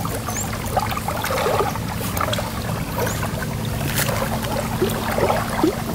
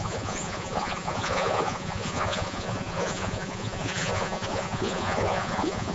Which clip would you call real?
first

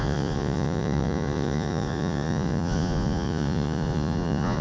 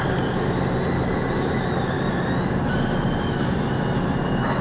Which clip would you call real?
second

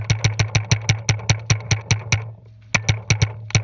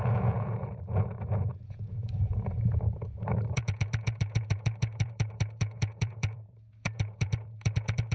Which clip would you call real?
first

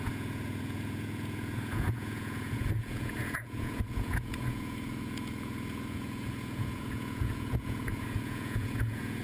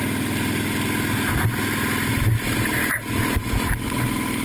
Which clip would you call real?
second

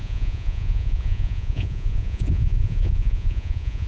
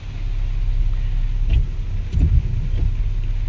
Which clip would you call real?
second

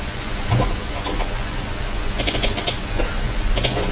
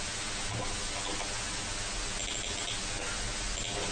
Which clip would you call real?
second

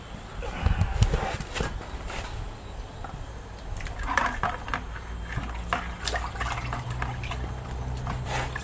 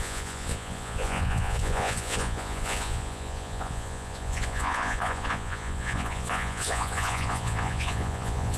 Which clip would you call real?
first